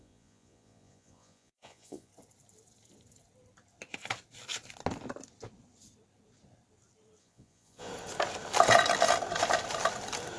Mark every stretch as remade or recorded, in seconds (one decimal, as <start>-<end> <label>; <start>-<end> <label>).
0.0-2.1 remade; 2.1-7.2 recorded; 7.2-7.9 remade; 7.9-10.4 recorded